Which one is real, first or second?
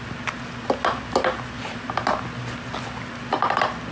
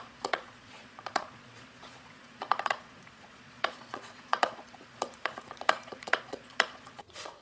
first